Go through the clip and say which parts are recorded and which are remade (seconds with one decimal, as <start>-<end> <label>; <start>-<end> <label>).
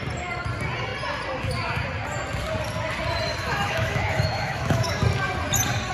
0.0-3.3 recorded; 3.3-5.0 remade; 5.0-5.9 recorded